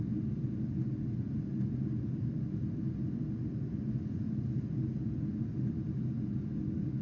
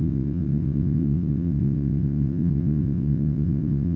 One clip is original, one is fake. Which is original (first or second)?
first